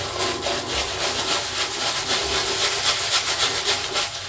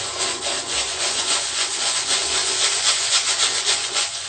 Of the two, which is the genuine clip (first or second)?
first